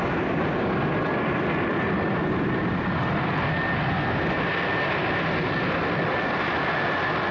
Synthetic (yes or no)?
no